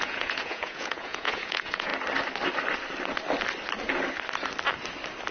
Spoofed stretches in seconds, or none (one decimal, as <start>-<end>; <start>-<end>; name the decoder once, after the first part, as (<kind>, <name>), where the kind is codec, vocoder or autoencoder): 0.0-1.9 (vocoder, Vocos)